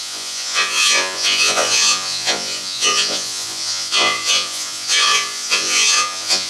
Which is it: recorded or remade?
remade